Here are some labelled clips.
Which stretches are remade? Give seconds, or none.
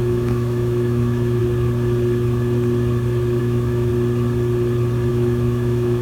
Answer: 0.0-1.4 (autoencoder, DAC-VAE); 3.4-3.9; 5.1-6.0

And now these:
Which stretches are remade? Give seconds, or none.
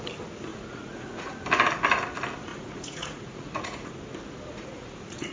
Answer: 0.5-1.4 (vocoder, Vocos); 2.5-3.9; 4.5-5.3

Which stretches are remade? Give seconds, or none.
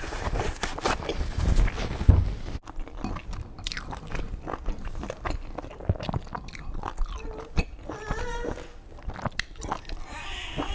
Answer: none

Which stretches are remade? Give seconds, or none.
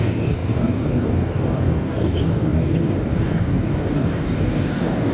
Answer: 0.0-5.1 (codec, DAC)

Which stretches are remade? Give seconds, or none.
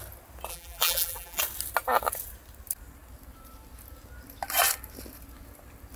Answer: 0.5-1.4 (vocoder, BigVGAN v2)